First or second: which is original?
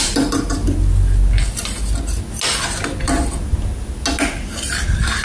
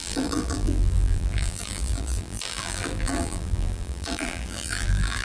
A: first